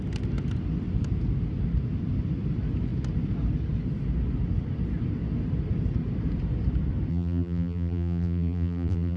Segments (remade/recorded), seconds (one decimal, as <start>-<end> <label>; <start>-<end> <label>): 0.0-7.1 recorded; 7.1-9.2 remade